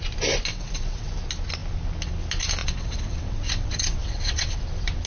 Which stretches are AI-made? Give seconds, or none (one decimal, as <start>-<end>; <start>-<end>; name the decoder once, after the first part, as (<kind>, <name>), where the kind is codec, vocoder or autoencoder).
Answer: 0.5-1.1 (vocoder, WaveNeXt); 2.6-4.6